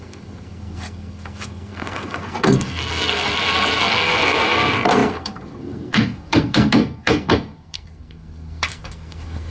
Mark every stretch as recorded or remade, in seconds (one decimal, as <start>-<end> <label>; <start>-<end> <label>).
0.0-9.5 remade